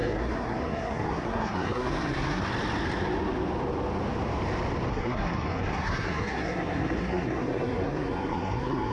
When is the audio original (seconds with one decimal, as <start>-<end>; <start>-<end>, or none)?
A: 2.4-4.9

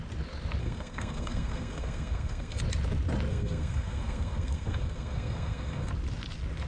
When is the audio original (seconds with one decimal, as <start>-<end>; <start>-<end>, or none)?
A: 0.0-0.6; 2.6-3.3; 5.9-6.7